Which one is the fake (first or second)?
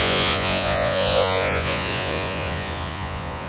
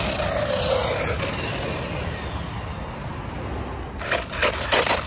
first